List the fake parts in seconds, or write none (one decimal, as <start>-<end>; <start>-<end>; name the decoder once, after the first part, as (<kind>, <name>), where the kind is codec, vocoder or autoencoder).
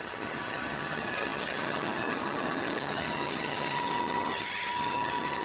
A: 0.0-5.4 (vocoder, HiFi-GAN)